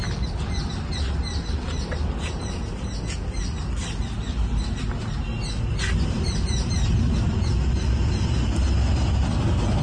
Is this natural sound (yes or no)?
yes